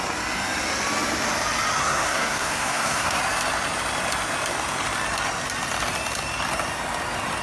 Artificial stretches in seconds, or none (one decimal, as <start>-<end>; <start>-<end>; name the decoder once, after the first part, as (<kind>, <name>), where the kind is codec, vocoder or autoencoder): 1.8-3.2 (codec, SNAC)